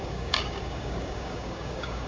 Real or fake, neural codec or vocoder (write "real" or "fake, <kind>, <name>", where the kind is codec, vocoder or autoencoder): fake, codec, DAC